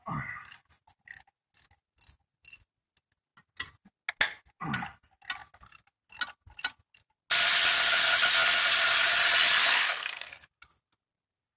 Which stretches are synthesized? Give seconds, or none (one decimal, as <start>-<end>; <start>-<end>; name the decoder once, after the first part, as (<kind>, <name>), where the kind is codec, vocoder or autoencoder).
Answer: 9.6-10.3 (codec, SNAC)